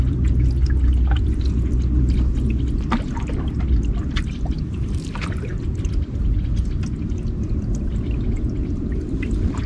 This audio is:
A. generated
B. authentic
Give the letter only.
B